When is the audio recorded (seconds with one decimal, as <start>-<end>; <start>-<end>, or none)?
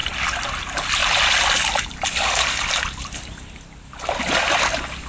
0.6-1.0; 4.1-5.1